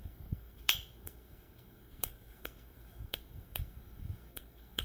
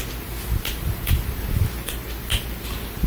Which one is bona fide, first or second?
second